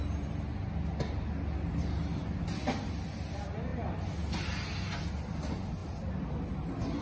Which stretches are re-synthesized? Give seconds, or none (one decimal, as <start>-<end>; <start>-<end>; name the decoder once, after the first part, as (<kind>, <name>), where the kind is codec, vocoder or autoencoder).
none